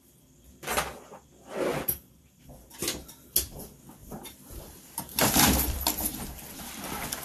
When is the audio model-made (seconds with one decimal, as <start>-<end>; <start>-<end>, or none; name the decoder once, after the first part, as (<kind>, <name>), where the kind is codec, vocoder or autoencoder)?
1.7-2.4 (vocoder, BigVGAN v2); 4.0-5.6